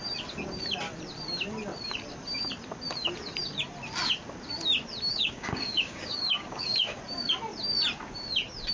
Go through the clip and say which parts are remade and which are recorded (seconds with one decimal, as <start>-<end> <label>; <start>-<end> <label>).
0.0-5.1 recorded; 5.1-7.0 remade; 7.0-8.7 recorded